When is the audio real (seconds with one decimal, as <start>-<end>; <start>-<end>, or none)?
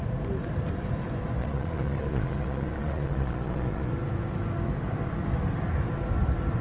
0.0-1.4; 3.9-6.6